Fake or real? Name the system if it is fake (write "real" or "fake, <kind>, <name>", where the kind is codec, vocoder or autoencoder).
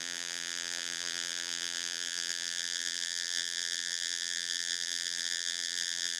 fake, vocoder, BigVGAN v2